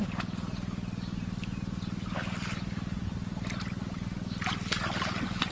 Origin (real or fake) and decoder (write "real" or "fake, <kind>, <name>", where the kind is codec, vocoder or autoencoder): real